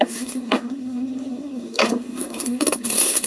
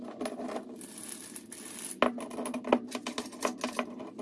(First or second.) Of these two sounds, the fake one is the first